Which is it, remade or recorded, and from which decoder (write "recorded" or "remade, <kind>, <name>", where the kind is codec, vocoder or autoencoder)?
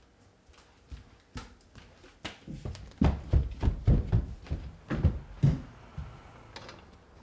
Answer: recorded